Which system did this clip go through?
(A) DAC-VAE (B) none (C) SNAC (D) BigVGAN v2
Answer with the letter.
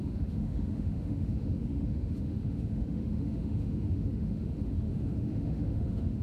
A